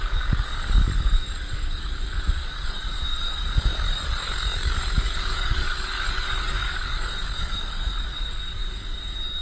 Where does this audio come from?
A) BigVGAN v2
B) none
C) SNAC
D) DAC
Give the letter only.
D